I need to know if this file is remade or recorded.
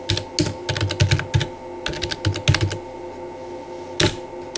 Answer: recorded